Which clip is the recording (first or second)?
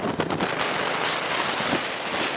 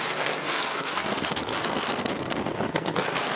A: first